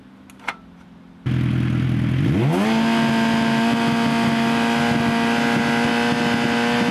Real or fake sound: real